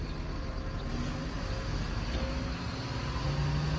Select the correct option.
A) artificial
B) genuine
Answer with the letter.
B